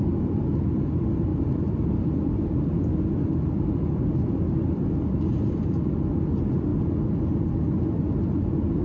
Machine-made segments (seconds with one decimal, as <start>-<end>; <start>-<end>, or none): 0.0-6.7; 8.2-8.8